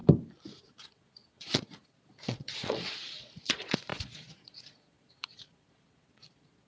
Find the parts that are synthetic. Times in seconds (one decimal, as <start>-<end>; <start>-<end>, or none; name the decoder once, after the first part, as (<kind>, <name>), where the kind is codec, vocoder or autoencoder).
0.7-6.7 (vocoder, Vocos)